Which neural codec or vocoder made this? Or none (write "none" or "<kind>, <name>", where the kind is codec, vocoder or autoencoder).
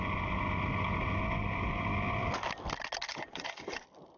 none